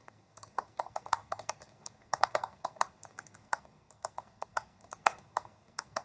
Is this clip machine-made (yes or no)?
yes